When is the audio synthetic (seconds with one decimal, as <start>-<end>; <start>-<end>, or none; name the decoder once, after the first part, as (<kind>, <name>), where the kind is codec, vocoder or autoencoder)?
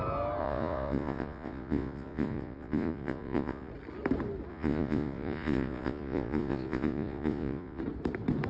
0.4-3.7 (vocoder, Vocos); 4.5-7.8